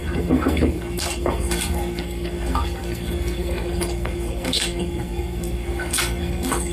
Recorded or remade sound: remade